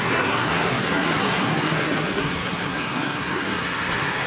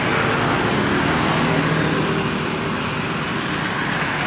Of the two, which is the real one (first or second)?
second